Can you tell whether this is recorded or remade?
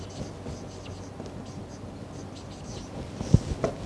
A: recorded